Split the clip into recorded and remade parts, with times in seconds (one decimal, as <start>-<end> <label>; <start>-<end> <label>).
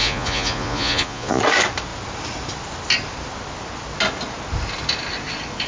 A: 0.0-1.4 remade; 1.4-5.7 recorded